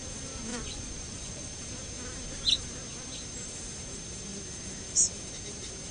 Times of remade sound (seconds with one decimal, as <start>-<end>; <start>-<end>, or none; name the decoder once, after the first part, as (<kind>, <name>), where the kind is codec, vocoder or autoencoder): 0.5-1.5 (vocoder, Vocos)

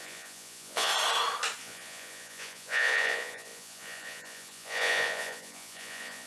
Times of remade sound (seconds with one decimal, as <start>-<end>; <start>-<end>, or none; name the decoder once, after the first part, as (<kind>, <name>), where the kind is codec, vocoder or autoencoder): 0.0-0.9 (vocoder, Vocos); 1.6-6.3